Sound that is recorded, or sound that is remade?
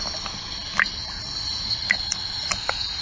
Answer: recorded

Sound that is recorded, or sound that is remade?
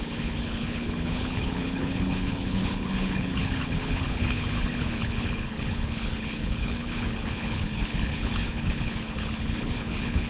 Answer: remade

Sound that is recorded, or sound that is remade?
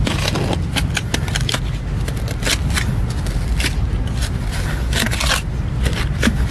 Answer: recorded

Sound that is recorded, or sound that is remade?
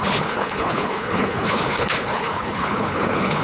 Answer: remade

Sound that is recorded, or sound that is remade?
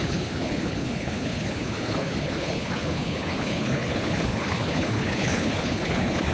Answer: remade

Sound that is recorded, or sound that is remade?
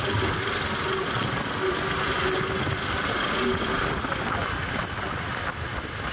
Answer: recorded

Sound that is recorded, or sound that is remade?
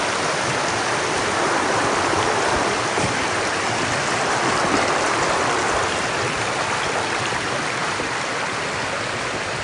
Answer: recorded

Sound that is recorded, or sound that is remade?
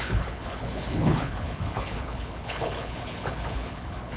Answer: remade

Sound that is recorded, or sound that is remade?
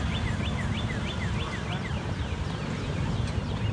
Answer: recorded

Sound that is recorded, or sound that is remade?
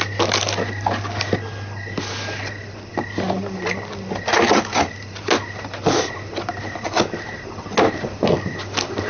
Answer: recorded